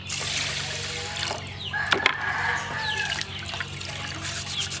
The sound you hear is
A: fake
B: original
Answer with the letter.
B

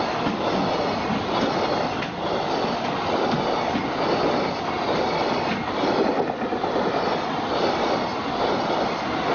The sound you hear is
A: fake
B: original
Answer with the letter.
B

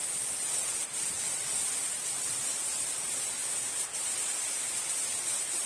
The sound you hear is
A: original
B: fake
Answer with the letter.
A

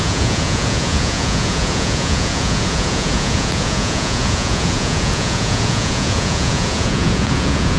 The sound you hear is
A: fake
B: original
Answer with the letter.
A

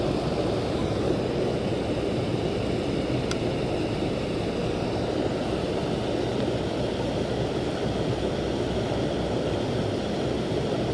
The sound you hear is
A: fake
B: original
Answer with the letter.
B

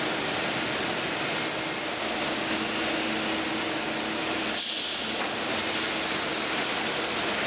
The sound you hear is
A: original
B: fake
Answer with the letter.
A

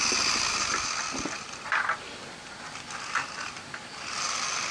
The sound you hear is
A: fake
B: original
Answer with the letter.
B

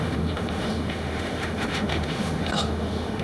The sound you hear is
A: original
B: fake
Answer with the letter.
B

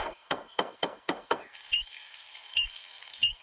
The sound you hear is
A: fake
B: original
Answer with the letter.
A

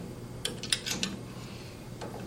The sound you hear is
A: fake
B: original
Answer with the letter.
B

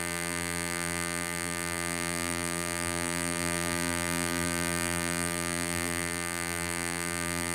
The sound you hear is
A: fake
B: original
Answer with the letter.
A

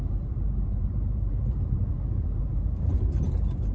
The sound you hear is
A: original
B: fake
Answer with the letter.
B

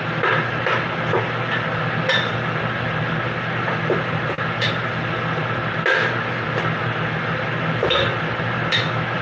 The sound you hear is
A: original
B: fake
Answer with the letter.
A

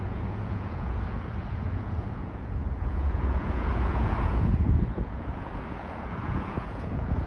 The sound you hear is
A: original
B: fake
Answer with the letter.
B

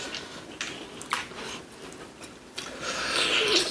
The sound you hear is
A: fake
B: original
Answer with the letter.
B